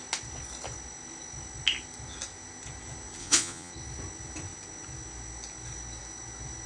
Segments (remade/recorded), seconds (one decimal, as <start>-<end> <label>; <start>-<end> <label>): 0.0-3.2 recorded; 3.2-3.7 remade; 3.7-6.7 recorded